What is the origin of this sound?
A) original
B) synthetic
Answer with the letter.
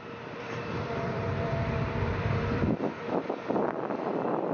B